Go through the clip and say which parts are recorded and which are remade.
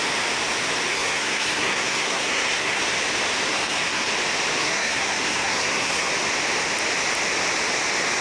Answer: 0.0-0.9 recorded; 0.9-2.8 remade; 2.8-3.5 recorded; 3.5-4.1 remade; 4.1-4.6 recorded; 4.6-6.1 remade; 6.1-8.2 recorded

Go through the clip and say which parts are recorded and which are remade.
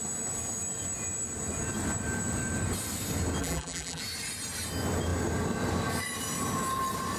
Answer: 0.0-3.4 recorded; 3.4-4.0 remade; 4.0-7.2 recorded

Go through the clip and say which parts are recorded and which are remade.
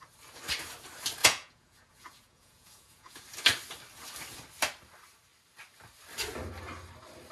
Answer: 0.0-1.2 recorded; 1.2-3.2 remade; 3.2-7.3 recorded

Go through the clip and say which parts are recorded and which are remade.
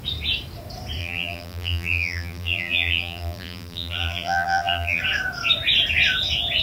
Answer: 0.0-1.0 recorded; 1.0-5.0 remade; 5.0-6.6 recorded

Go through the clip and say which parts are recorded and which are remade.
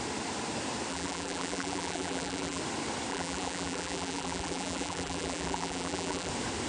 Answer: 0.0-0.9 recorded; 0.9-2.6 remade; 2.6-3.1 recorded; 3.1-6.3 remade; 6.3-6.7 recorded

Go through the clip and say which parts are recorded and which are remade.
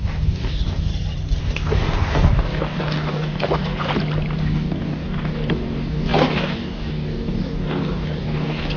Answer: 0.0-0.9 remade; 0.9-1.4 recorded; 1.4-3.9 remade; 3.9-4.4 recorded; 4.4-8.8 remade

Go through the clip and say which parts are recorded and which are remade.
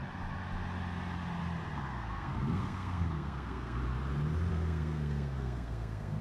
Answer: 0.0-1.8 recorded; 1.8-3.8 remade; 3.8-4.5 recorded; 4.5-6.2 remade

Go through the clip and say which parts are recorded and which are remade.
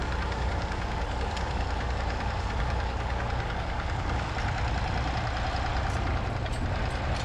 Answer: 0.0-4.3 remade; 4.3-7.2 recorded